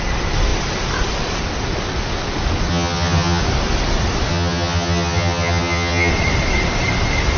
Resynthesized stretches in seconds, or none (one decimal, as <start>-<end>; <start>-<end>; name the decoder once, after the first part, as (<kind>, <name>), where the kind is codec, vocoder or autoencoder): 2.7-3.4 (vocoder, HiFi-GAN); 4.3-6.1